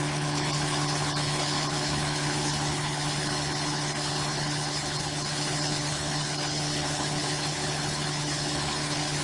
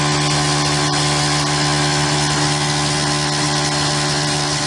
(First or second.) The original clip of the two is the second